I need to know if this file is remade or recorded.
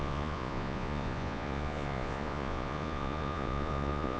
remade